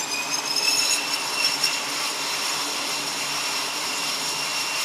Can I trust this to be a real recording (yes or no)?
yes